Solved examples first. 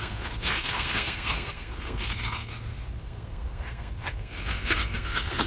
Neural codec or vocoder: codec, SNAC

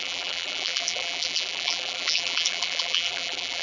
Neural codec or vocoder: vocoder, BigVGAN v2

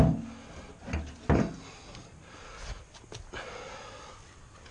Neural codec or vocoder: none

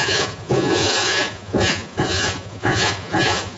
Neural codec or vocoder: vocoder, Vocos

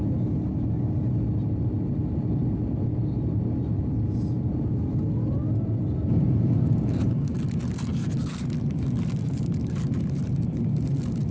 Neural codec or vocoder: none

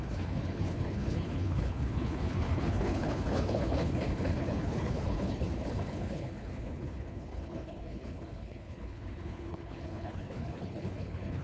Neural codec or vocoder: codec, HILCodec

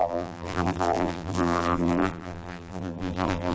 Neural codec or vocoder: vocoder, BigVGAN v2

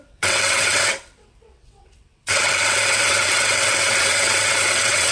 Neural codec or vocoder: vocoder, WaveNeXt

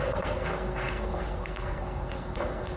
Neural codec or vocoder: codec, SNAC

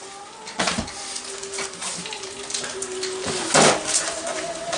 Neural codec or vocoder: none